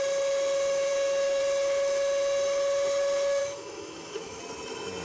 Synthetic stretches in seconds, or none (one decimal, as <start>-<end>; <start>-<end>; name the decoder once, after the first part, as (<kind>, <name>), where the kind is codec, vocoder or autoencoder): 0.9-1.4 (autoencoder, DAC-VAE); 3.4-4.4